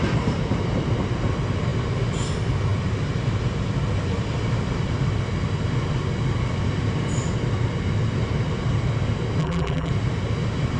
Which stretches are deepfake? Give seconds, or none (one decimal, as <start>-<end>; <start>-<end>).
9.4-9.9